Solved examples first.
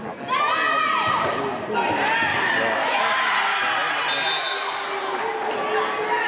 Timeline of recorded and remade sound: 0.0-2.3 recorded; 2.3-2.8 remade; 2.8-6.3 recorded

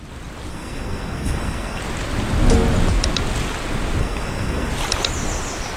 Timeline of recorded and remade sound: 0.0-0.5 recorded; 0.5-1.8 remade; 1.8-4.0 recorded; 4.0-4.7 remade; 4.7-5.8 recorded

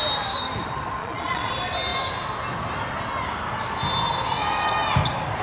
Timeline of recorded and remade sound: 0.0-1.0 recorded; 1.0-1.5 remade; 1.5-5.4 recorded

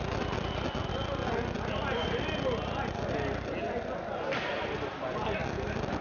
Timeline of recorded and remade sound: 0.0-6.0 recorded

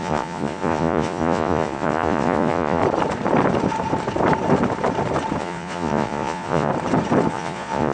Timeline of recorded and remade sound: 0.0-2.8 remade; 2.8-5.4 recorded; 5.4-6.7 remade; 6.7-7.3 recorded; 7.3-7.9 remade

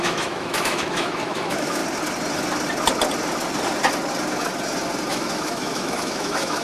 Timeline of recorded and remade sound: 0.0-1.8 remade; 1.8-5.1 recorded; 5.1-6.6 remade

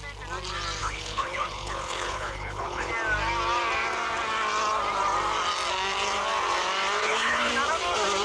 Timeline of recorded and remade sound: 0.0-0.8 recorded; 0.8-2.9 remade; 2.9-7.0 recorded; 7.0-7.5 remade; 7.5-8.2 recorded